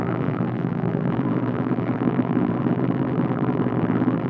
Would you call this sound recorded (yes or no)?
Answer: no